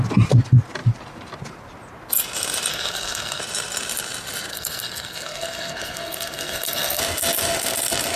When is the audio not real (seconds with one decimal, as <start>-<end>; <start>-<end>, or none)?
2.7-3.4; 4.5-7.0